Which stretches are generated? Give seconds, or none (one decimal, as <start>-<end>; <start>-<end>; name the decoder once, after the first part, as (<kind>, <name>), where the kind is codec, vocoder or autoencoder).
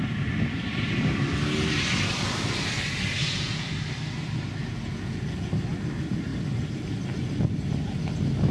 3.2-3.7 (vocoder, Vocos); 4.6-5.5